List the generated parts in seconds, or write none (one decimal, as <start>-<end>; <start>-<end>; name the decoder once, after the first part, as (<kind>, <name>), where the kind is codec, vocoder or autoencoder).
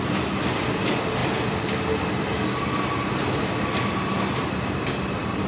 none